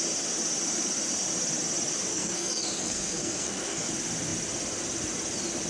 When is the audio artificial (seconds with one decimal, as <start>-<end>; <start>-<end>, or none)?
2.1-3.9